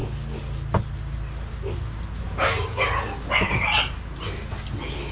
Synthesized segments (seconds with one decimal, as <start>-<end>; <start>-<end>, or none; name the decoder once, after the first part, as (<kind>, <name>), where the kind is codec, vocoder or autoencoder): 2.4-3.0 (codec, DAC)